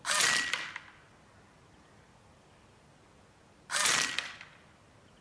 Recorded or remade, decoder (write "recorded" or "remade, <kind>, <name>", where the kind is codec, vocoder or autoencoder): recorded